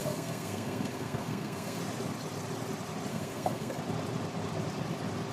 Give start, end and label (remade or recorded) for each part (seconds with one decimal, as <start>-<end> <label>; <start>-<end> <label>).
0.0-1.8 remade; 1.8-3.1 recorded; 3.1-3.8 remade; 3.8-5.3 recorded